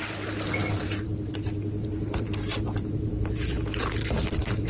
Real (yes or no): no